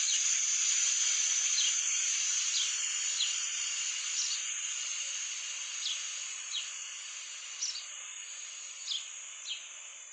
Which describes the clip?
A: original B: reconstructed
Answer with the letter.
A